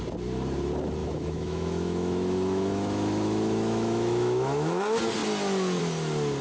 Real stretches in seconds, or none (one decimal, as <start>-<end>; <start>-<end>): 0.0-1.0; 4.8-6.4